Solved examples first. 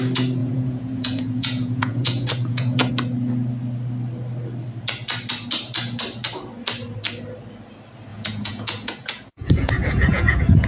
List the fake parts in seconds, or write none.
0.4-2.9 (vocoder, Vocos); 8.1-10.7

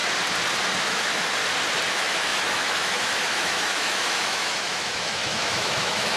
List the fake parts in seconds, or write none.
0.8-1.4 (autoencoder, DAC-VAE); 1.9-6.2

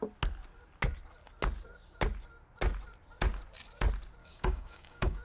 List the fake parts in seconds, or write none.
4.2-5.2 (codec, DAC)

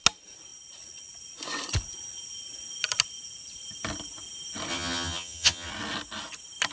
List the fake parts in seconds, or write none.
4.7-5.7 (vocoder, HiFi-GAN)

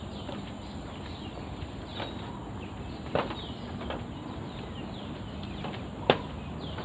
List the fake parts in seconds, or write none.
none

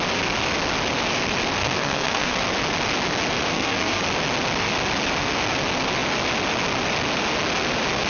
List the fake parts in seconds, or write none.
1.6-2.4 (codec, SNAC); 3.5-4.0

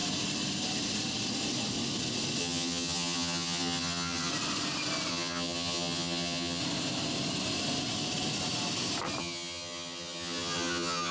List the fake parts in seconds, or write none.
2.4-4.3 (vocoder, HiFi-GAN); 5.1-6.6; 9.2-11.1